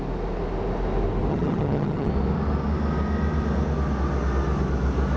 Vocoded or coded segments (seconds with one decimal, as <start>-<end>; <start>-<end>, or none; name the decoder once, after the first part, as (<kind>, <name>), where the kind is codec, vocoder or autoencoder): 1.3-2.1 (vocoder, HiFi-GAN)